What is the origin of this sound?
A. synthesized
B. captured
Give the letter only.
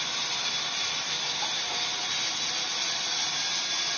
B